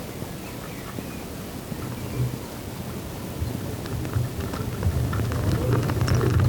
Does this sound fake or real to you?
real